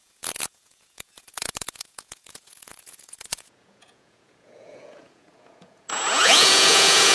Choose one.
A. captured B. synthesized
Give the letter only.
B